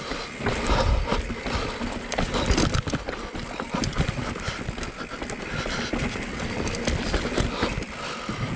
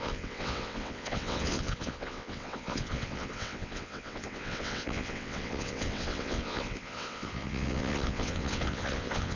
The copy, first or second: second